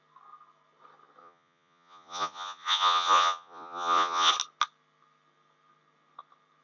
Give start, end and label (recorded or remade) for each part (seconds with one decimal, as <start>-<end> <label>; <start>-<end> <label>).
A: 0.0-1.2 recorded; 1.2-4.3 remade; 4.3-6.6 recorded